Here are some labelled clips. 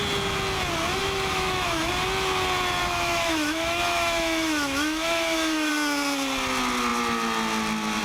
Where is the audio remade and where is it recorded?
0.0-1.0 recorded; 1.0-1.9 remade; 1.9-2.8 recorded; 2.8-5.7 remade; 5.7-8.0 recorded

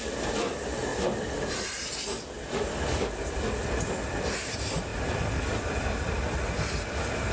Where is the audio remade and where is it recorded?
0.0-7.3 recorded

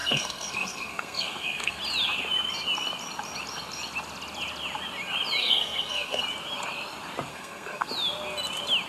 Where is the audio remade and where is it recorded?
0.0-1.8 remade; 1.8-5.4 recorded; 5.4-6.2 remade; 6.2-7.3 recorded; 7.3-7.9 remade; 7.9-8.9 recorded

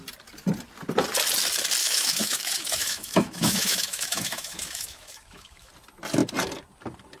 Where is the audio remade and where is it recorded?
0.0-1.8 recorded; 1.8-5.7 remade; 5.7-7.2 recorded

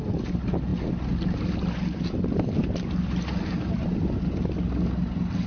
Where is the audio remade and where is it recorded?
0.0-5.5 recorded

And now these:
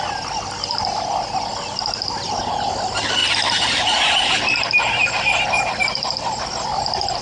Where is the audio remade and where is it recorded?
0.0-3.2 recorded; 3.2-4.3 remade; 4.3-7.2 recorded

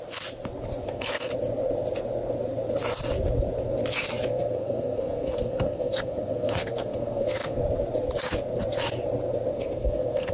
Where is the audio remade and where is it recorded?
0.0-0.8 recorded; 0.8-1.3 remade; 1.3-4.3 recorded; 4.3-7.6 remade; 7.6-9.5 recorded; 9.5-10.3 remade